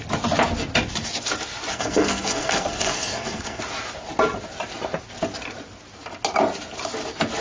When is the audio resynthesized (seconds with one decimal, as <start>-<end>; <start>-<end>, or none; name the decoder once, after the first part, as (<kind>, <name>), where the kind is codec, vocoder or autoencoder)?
1.7-3.6 (codec, SNAC)